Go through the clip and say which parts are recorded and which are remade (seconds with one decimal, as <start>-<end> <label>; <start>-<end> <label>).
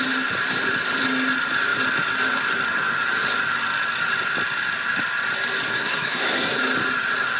0.0-5.7 recorded; 5.7-6.6 remade; 6.6-7.4 recorded